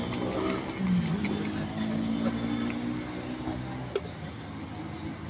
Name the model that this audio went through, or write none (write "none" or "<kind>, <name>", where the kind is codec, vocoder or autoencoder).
none